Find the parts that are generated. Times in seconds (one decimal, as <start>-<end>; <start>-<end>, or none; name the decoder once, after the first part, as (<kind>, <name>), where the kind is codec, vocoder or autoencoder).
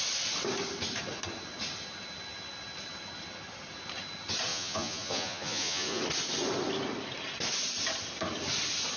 4.5-6.0 (vocoder, Vocos)